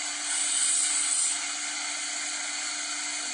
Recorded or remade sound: recorded